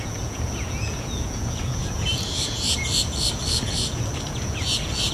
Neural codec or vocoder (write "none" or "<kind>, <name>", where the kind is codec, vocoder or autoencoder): vocoder, Vocos